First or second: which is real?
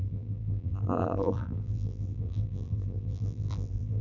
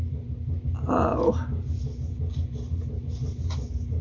second